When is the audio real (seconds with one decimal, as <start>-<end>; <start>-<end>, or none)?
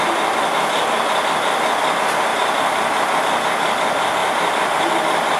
0.0-4.2; 4.9-5.4